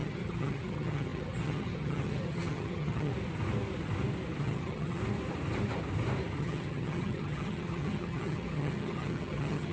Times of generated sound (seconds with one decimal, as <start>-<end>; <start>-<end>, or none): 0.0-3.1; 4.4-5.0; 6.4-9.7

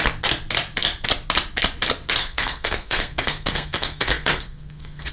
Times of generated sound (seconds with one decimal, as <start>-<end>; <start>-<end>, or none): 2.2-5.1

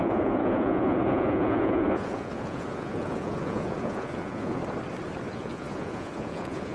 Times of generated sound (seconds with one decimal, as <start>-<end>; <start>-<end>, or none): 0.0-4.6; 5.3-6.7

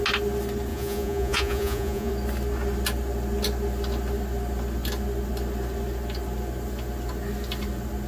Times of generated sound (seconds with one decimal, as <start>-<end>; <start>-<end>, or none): 0.7-2.1

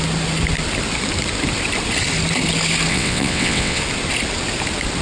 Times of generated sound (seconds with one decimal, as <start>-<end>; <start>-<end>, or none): 2.9-3.8